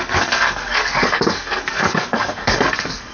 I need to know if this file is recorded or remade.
remade